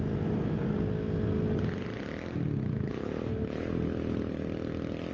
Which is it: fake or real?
real